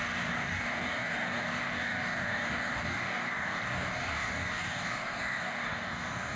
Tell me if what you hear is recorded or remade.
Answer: remade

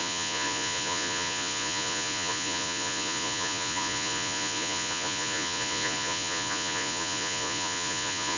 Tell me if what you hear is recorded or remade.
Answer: remade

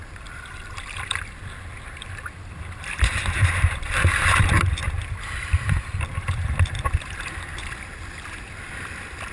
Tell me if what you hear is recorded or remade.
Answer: remade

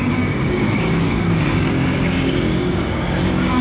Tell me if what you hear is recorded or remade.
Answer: remade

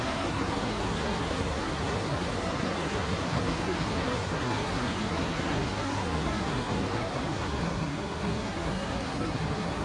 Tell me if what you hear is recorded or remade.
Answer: remade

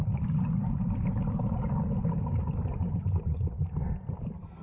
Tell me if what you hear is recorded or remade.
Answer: remade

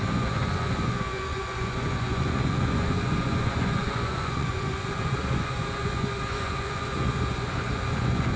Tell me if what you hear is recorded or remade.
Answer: remade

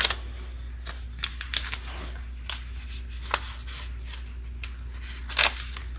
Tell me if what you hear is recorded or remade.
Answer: recorded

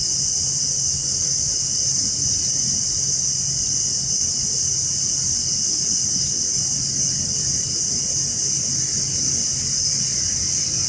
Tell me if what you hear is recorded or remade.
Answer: recorded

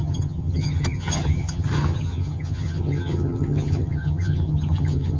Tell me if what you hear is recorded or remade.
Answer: remade